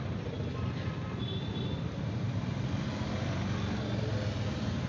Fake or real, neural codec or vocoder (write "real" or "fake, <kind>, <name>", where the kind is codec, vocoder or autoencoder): real